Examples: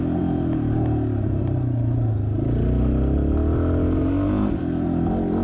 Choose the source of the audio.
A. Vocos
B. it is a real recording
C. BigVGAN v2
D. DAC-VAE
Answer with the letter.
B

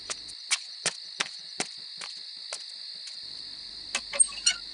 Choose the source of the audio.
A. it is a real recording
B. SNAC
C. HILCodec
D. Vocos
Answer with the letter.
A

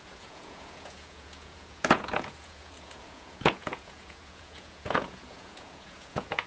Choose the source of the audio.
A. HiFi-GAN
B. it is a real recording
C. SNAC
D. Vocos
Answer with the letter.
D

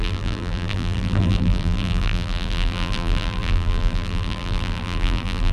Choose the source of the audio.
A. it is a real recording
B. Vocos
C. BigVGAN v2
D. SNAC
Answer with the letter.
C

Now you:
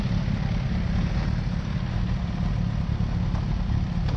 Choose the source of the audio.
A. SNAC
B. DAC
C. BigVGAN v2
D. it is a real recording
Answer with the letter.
D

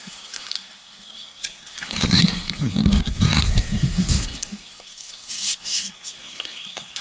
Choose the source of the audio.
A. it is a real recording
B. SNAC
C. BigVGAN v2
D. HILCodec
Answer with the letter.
B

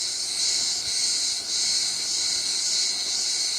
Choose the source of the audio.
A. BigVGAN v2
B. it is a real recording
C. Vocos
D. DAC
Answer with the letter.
B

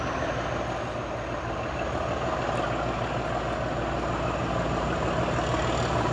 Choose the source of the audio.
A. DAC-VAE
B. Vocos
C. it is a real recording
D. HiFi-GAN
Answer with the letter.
C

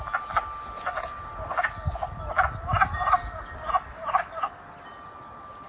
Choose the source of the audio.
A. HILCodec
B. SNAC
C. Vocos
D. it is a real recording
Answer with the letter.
D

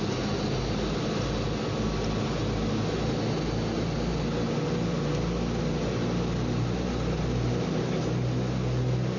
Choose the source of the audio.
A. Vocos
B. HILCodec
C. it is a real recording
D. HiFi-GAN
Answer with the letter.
C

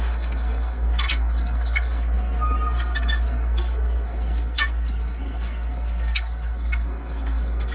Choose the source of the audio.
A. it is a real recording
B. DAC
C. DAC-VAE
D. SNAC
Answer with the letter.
D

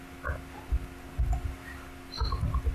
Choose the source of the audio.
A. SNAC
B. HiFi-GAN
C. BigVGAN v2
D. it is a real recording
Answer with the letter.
D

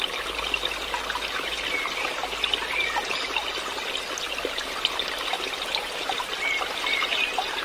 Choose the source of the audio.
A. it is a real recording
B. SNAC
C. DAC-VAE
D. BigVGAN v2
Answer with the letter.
A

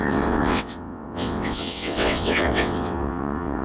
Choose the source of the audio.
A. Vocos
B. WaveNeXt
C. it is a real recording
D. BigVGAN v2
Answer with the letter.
B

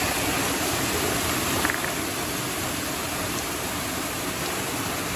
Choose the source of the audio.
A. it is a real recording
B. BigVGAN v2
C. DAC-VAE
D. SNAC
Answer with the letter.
A